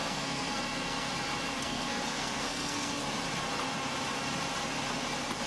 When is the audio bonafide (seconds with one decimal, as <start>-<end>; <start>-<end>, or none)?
1.1-1.5; 3.0-5.5